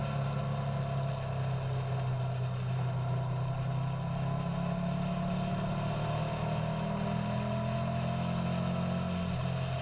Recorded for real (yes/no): yes